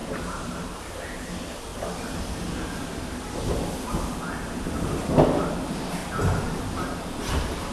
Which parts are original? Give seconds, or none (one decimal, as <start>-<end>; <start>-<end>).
1.2-6.0; 6.7-7.7